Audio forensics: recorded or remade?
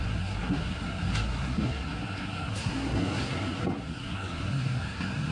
remade